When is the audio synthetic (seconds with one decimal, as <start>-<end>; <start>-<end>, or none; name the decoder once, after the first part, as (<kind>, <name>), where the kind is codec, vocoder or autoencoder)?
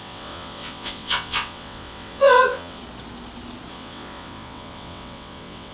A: 0.0-2.8 (vocoder, WaveNeXt); 3.7-5.7